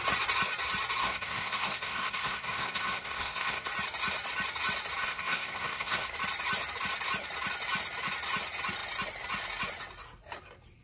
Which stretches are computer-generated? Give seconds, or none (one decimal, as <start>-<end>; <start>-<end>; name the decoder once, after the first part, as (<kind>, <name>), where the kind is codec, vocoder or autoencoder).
1.0-3.7 (codec, SNAC); 5.0-6.1